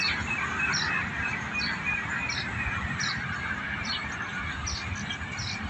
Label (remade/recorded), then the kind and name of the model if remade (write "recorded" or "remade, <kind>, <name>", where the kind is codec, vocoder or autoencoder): recorded